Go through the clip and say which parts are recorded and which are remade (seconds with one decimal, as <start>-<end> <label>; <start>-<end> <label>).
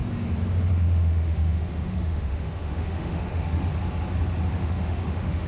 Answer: 0.0-0.7 recorded; 0.7-3.7 remade; 3.7-4.5 recorded; 4.5-5.5 remade